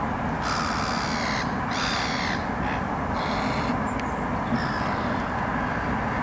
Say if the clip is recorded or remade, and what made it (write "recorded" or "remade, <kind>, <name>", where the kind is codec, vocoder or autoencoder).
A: recorded